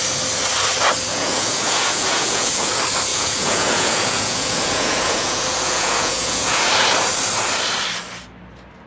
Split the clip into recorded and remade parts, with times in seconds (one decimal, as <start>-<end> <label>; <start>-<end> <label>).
0.0-1.1 recorded; 1.1-2.7 remade; 2.7-3.1 recorded; 3.1-6.7 remade; 6.7-8.9 recorded